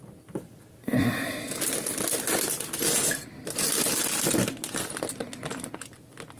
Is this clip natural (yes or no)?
yes